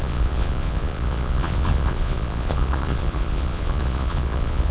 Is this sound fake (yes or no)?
yes